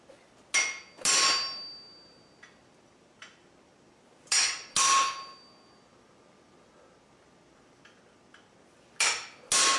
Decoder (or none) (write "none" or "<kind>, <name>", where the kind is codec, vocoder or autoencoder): none